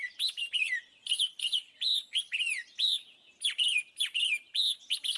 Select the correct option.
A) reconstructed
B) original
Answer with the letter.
A